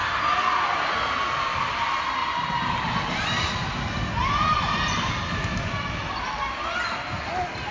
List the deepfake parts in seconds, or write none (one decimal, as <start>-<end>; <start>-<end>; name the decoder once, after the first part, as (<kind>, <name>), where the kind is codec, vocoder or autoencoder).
2.2-4.1 (vocoder, BigVGAN v2)